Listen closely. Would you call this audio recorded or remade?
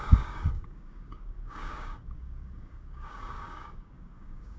remade